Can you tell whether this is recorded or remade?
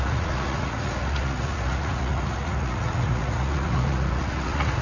remade